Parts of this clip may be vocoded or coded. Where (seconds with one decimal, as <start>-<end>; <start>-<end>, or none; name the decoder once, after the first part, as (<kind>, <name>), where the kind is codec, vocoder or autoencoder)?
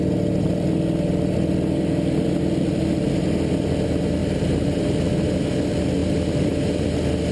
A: 4.2-4.8 (vocoder, BigVGAN v2)